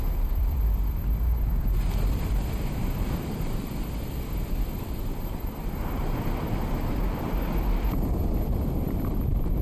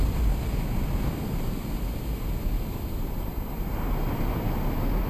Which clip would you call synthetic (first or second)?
first